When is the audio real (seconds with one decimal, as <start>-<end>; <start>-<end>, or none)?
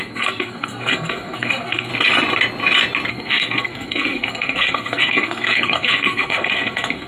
1.9-3.1